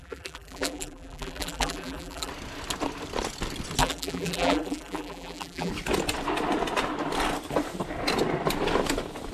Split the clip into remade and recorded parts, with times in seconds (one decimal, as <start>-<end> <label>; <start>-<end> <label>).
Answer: 0.0-2.3 remade; 2.3-3.8 recorded; 3.8-5.7 remade; 5.7-9.3 recorded